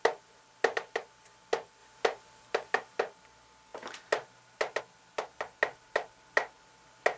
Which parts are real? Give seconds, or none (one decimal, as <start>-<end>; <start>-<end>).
0.0-7.2

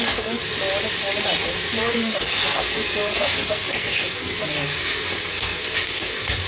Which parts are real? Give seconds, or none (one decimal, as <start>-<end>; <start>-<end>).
0.4-1.8

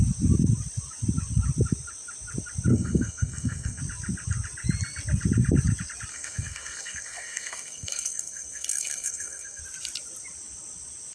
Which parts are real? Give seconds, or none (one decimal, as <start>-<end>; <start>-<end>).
0.0-2.7; 3.8-6.1; 9.6-11.1

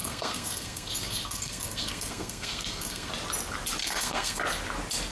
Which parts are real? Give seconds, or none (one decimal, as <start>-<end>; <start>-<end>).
3.1-3.8; 4.4-5.1